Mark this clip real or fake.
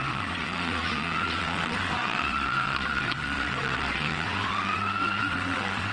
fake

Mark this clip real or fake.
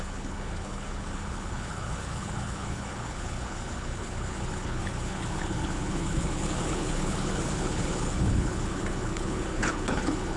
fake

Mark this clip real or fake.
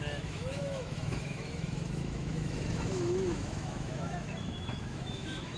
fake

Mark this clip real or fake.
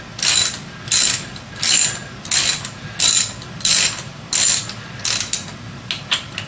real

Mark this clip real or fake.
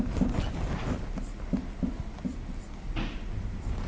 real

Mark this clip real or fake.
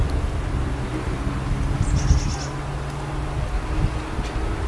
real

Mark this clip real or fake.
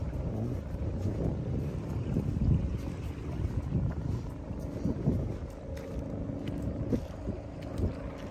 real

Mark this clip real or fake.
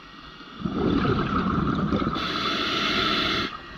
real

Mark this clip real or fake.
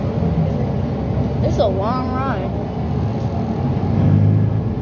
real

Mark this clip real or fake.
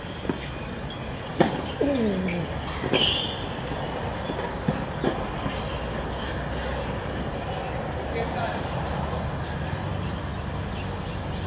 real